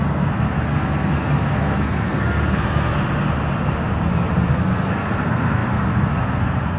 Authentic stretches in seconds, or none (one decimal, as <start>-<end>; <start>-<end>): 2.9-4.5